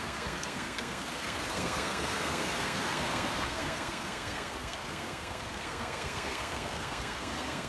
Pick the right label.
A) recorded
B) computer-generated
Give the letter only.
B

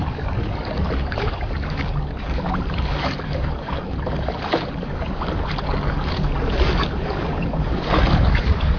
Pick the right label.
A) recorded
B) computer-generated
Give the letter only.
B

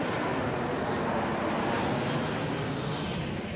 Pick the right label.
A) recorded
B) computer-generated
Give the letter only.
A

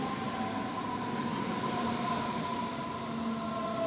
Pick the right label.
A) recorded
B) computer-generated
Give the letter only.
A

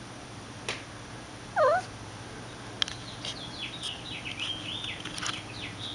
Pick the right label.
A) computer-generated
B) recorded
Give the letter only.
B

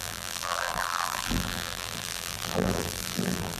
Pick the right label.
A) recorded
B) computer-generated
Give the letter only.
B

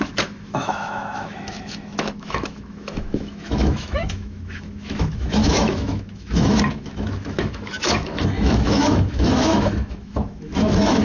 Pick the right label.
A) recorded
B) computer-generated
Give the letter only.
B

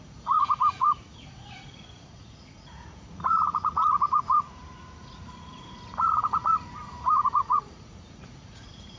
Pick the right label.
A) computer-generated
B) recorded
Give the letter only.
A